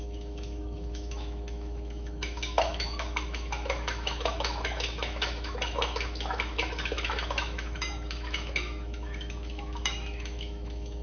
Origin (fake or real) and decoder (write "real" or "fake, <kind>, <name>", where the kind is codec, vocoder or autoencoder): fake, autoencoder, DAC-VAE